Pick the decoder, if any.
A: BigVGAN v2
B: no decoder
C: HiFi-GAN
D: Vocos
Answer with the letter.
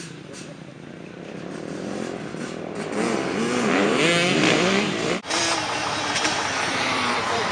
A